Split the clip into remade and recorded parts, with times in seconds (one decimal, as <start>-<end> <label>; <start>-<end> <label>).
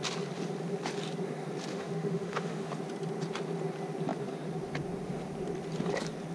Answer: 0.0-1.7 recorded; 1.7-2.7 remade; 2.7-6.3 recorded